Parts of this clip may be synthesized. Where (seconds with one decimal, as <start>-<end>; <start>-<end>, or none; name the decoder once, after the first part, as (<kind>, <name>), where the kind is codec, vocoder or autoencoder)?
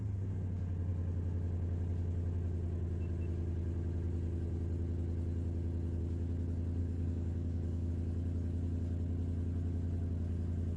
6.8-7.9 (codec, DAC)